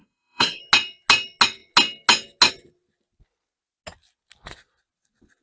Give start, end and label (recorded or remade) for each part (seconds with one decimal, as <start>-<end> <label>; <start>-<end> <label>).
0.0-0.6 remade; 0.6-5.4 recorded

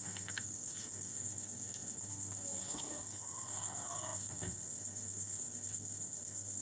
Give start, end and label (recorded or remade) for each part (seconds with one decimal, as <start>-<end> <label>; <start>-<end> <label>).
0.0-6.6 remade

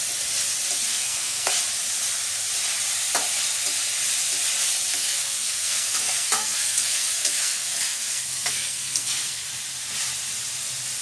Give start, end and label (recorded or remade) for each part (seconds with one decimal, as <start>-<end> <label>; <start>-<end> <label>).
0.0-0.9 recorded; 0.9-1.5 remade; 1.5-4.9 recorded; 4.9-9.5 remade; 9.5-11.0 recorded

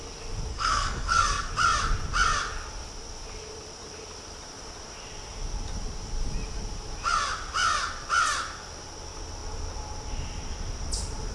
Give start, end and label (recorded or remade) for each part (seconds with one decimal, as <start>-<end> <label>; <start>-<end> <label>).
0.0-0.5 recorded; 0.5-1.5 remade; 1.5-11.3 recorded

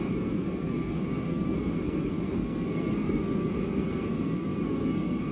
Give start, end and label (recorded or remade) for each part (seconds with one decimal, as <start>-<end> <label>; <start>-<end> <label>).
0.0-5.3 remade

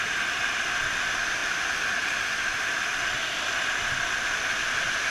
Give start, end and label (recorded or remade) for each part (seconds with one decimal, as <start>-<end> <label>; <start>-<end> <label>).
0.0-5.1 recorded

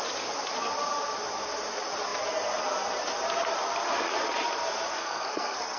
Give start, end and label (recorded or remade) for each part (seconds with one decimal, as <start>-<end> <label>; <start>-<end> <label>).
0.0-5.0 recorded; 5.0-5.8 remade